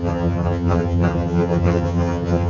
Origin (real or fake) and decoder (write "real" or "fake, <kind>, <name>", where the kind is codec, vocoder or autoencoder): fake, vocoder, HiFi-GAN